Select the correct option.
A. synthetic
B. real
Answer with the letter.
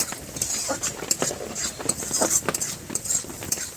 A